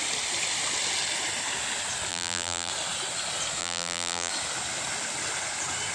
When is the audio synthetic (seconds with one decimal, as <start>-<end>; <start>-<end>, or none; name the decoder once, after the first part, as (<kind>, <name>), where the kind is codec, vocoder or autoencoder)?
2.1-2.7 (vocoder, BigVGAN v2); 3.6-4.3